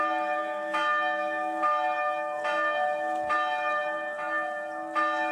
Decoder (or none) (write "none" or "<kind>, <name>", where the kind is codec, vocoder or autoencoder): none